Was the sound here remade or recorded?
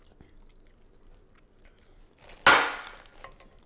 recorded